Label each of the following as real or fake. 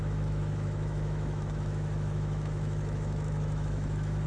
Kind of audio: fake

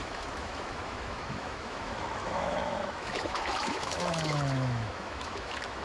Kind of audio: fake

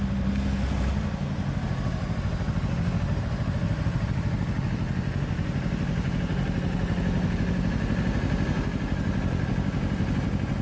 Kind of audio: real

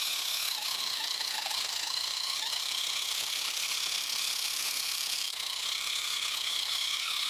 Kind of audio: fake